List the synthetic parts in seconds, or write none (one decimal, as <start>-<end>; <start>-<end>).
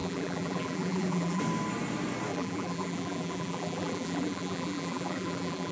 0.0-1.4; 2.3-5.7